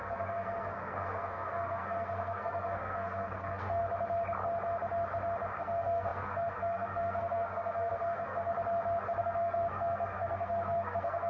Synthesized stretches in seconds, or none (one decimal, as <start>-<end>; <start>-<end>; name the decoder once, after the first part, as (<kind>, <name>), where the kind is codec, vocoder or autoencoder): 0.0-3.8 (codec, SNAC); 5.6-8.5; 9.2-11.3